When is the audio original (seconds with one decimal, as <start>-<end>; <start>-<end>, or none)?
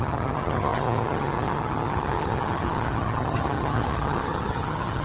none